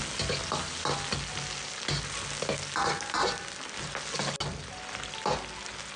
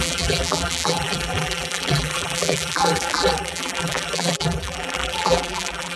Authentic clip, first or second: first